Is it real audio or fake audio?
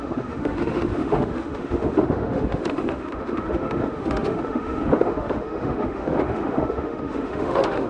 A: fake